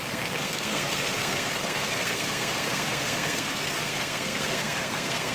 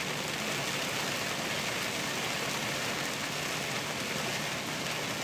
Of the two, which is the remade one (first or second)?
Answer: first